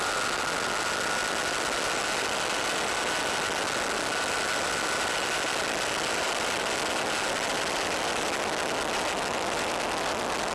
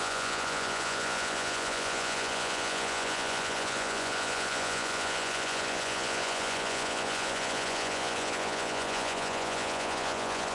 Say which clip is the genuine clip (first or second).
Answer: first